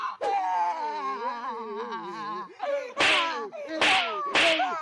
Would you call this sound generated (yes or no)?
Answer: no